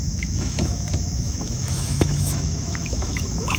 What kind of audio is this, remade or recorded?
remade